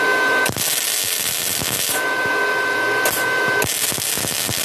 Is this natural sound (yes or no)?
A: yes